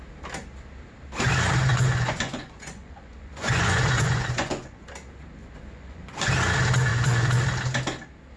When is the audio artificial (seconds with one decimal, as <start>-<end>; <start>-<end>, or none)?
1.7-4.9; 5.4-6.3; 6.9-7.4